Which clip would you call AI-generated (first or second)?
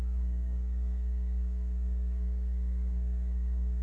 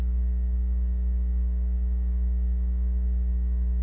first